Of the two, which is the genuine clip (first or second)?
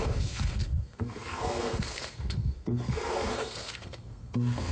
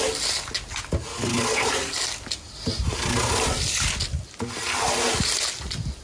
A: second